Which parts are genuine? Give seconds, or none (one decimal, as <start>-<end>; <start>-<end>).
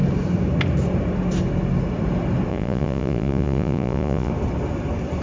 0.0-2.5; 4.3-5.2